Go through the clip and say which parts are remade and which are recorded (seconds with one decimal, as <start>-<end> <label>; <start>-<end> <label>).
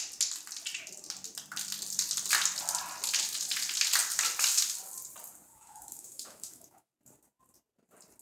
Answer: 0.0-5.5 recorded; 5.5-6.9 remade; 6.9-8.2 recorded